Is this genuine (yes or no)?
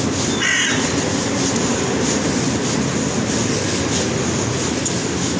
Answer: yes